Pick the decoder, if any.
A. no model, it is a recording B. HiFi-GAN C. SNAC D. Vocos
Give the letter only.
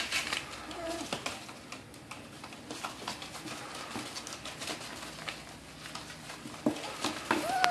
A